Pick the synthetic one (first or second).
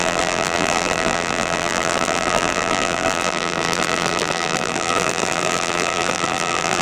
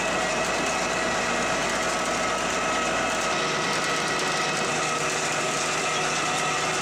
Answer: first